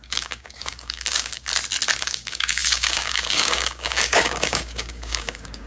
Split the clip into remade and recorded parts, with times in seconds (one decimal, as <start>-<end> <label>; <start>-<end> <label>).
0.0-1.5 remade; 1.5-2.0 recorded; 2.0-5.7 remade